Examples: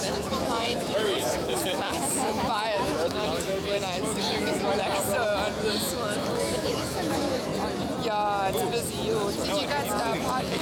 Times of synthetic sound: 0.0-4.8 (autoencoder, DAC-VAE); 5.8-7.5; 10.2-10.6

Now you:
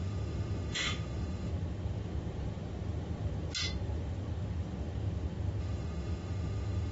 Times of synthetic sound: 0.0-1.5 (autoencoder, DAC-VAE); 5.6-6.9

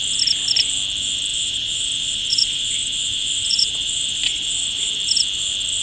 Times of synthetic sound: 1.3-4.8 (vocoder, Vocos)

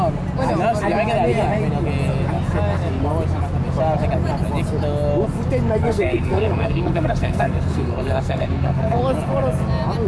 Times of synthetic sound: 5.8-9.0 (codec, SNAC)